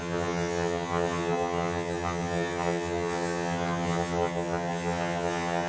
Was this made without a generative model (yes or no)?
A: no